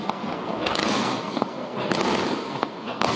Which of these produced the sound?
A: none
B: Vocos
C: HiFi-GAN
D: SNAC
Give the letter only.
D